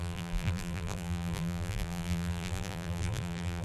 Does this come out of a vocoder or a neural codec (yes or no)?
yes